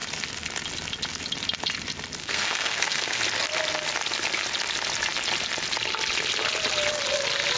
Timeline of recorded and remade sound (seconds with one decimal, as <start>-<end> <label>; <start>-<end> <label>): 0.0-2.2 recorded; 2.2-3.2 remade; 3.2-7.6 recorded